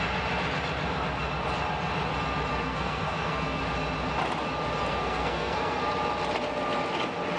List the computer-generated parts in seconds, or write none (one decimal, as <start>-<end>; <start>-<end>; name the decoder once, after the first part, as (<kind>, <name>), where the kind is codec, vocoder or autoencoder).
2.5-3.6 (codec, SNAC); 4.8-5.8